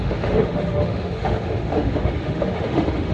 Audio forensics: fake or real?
fake